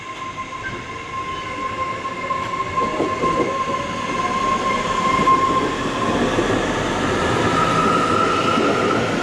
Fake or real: real